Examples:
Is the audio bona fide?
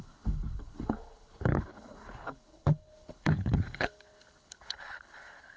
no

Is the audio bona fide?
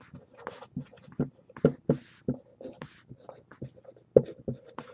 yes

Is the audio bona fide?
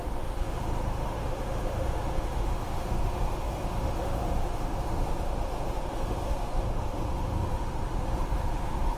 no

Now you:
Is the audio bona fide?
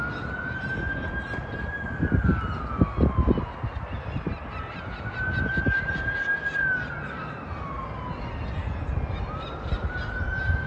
yes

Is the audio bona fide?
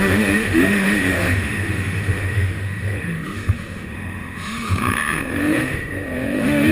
no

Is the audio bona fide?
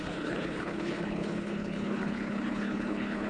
no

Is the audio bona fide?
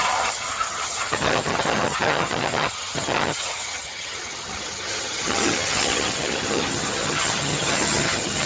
no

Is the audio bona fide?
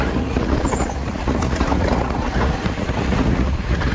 no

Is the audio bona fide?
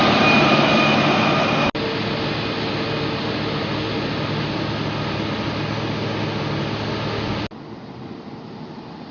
yes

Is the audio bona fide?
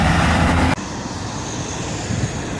yes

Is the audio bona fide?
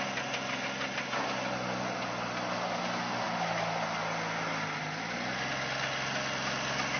yes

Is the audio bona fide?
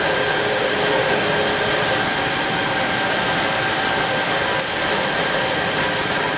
yes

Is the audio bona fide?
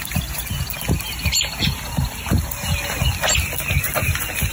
yes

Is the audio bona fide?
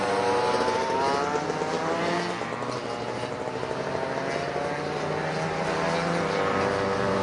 yes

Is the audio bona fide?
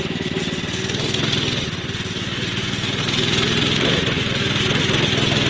yes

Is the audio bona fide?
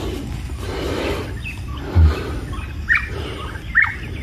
yes